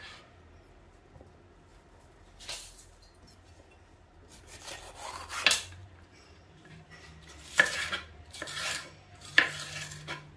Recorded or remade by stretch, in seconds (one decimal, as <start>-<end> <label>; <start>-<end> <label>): 0.0-5.8 recorded; 5.8-9.4 remade; 9.4-10.4 recorded